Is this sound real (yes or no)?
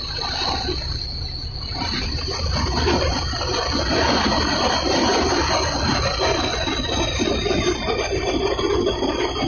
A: yes